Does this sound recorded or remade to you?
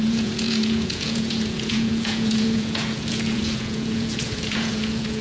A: remade